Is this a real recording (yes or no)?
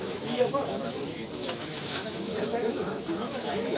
no